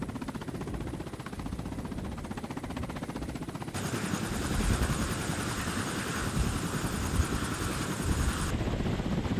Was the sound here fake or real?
real